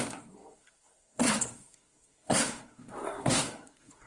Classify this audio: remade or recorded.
remade